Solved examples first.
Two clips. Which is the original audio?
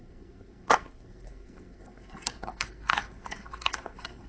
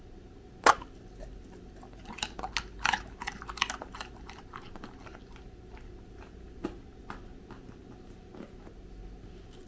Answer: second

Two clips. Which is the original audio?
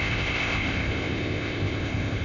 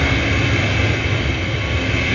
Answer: second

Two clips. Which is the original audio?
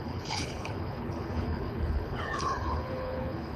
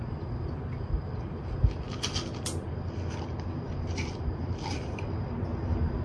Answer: second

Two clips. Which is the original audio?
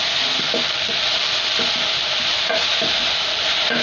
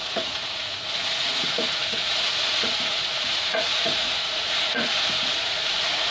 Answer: first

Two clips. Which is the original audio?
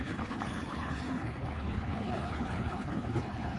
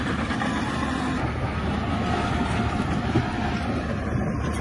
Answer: second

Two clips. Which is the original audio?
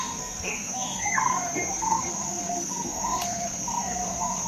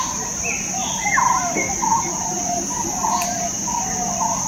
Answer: second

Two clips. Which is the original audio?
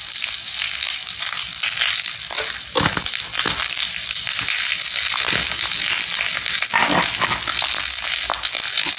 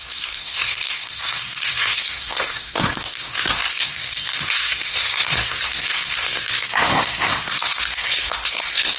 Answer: first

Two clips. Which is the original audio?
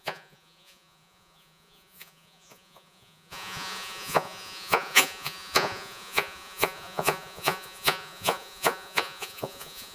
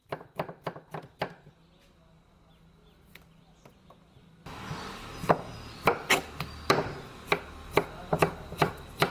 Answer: second